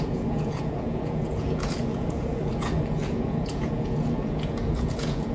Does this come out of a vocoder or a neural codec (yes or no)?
yes